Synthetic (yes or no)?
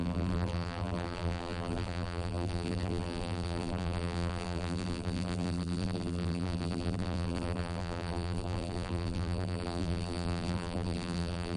yes